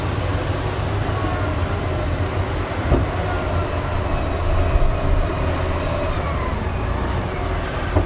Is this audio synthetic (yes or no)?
no